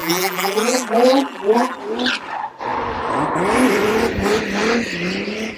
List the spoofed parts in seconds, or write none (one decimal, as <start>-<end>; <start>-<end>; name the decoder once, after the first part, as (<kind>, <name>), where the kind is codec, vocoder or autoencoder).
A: 0.0-1.8 (vocoder, BigVGAN v2)